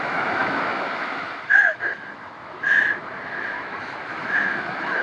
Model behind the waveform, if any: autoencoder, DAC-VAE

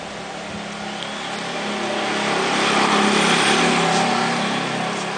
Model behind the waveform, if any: none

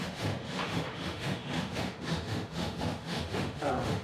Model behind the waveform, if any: autoencoder, DAC-VAE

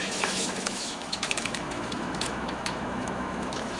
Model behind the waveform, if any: autoencoder, DAC-VAE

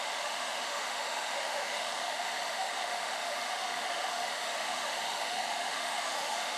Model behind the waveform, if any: autoencoder, DAC-VAE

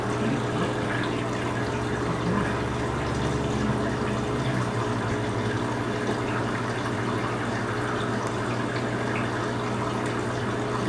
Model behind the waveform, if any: none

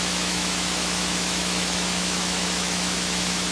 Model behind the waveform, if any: autoencoder, DAC-VAE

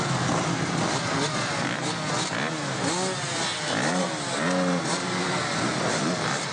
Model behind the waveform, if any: none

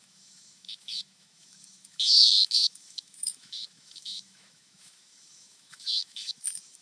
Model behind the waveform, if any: autoencoder, DAC-VAE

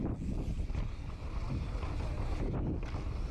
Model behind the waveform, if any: none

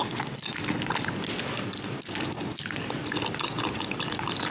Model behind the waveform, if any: none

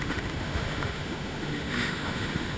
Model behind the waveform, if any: autoencoder, DAC-VAE